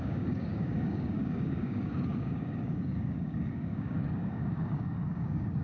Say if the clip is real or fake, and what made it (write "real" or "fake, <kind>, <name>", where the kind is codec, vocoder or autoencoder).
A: fake, codec, DAC